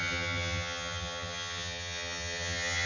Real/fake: fake